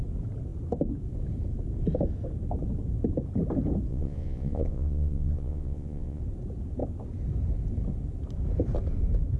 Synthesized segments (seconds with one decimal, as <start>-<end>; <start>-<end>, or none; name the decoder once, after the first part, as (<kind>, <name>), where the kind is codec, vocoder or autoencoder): 3.9-6.2 (vocoder, Vocos)